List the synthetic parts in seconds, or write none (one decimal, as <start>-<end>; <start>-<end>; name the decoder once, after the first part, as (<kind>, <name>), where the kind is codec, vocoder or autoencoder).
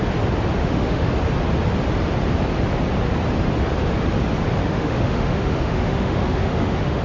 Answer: 0.6-1.1 (autoencoder, DAC-VAE); 4.6-7.0